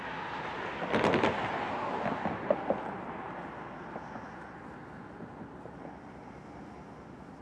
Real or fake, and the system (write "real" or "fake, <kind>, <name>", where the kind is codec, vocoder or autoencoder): real